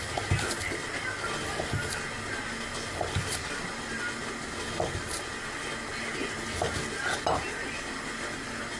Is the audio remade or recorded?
recorded